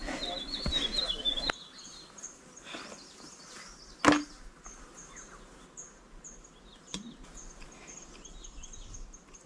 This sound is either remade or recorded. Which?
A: recorded